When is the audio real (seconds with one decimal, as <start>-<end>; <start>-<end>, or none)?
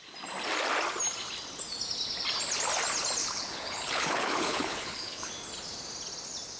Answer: 0.0-3.2; 5.3-6.6